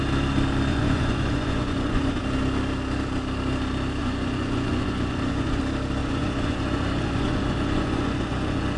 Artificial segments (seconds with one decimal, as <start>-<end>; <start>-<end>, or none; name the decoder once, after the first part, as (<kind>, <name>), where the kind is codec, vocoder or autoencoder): 0.7-2.2 (vocoder, Vocos); 4.0-5.6; 6.0-8.8